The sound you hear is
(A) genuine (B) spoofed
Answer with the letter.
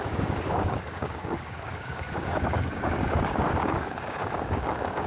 B